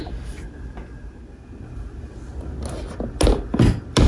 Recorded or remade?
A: remade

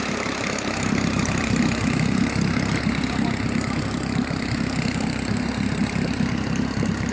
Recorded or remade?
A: remade